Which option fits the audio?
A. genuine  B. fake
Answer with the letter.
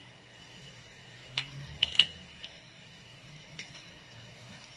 B